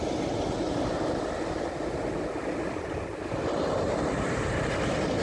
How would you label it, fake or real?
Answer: real